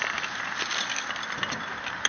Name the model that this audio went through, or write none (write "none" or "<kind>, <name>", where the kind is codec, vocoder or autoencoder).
none